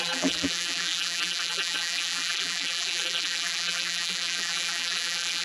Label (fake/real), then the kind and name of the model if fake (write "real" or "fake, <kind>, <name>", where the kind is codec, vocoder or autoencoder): fake, vocoder, BigVGAN v2